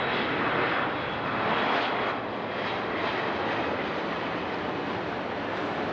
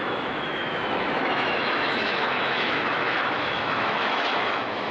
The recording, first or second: first